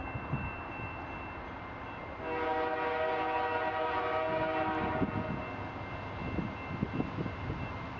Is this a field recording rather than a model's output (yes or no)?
yes